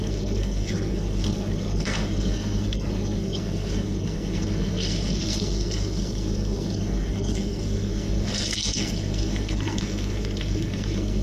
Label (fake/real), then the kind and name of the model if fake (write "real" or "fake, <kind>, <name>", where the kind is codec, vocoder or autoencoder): fake, codec, SNAC